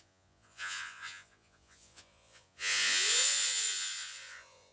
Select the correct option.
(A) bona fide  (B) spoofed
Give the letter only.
B